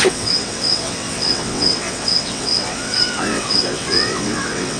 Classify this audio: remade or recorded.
remade